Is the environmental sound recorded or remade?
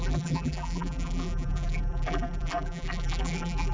remade